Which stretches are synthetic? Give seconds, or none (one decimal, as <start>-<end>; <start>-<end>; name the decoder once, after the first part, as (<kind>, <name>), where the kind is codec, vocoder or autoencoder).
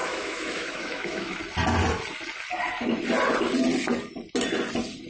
0.0-1.4 (autoencoder, DAC-VAE)